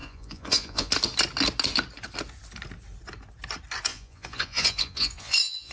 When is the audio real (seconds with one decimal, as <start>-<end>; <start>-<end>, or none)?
0.9-3.9